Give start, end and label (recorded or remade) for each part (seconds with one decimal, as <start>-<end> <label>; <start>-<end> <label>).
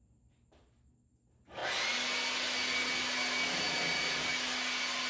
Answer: 0.0-5.1 recorded